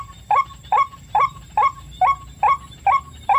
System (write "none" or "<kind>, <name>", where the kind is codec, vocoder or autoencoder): none